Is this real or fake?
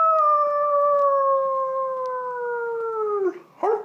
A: real